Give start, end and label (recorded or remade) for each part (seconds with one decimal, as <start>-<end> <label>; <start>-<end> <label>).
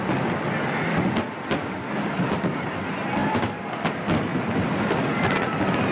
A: 0.0-3.2 recorded; 3.2-3.9 remade; 3.9-5.9 recorded